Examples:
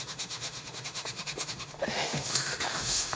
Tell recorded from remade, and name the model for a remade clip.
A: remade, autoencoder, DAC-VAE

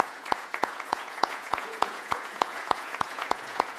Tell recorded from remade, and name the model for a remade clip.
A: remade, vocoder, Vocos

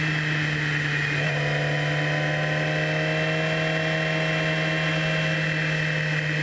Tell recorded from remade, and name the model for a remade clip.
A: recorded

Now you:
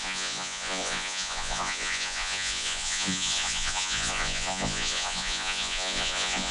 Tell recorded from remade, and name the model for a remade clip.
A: remade, vocoder, Vocos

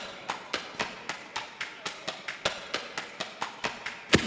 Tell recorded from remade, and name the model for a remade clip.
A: recorded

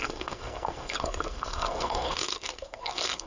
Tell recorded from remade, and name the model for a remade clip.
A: remade, codec, SNAC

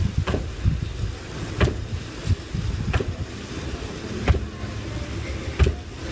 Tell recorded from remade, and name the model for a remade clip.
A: recorded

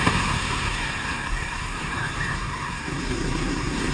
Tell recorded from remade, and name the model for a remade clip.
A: remade, codec, SNAC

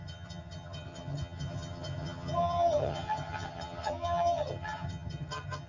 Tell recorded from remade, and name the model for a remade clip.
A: remade, vocoder, HiFi-GAN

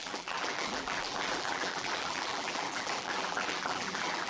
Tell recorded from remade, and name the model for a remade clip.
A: remade, vocoder, BigVGAN v2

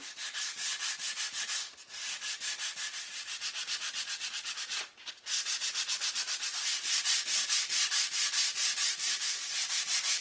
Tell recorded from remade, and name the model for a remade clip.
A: recorded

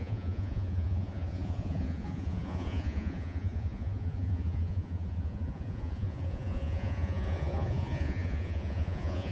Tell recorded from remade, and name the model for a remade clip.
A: remade, vocoder, Vocos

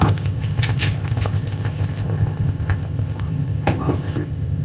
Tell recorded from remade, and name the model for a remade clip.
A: remade, codec, ZipCodec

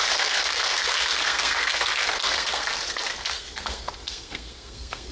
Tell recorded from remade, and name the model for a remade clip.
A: remade, codec, SNAC